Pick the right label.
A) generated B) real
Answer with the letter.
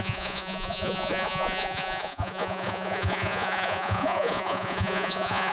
A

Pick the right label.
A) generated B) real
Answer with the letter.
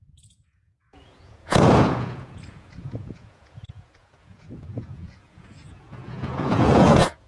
A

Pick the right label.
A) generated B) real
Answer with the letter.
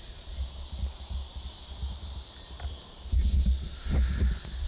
B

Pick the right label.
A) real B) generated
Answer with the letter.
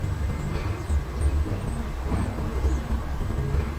A